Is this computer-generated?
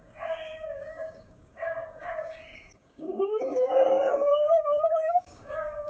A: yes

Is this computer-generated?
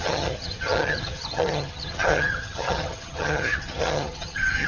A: yes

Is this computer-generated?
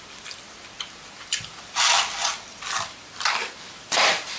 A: yes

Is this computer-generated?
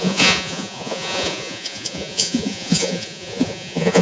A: yes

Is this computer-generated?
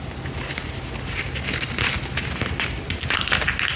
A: no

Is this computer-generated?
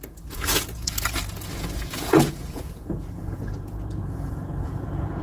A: yes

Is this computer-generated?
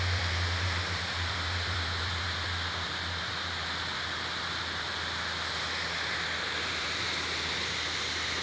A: yes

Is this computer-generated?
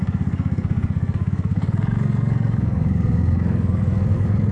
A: yes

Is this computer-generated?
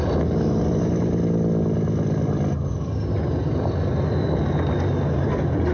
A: no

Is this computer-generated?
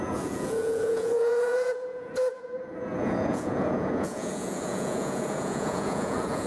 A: yes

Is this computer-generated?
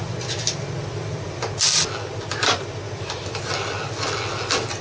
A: no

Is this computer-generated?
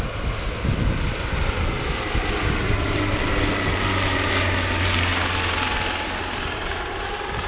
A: no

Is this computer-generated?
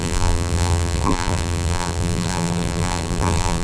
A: yes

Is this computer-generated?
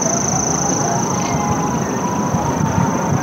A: yes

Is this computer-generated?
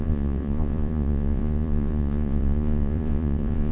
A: yes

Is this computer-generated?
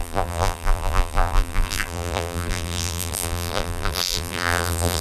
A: yes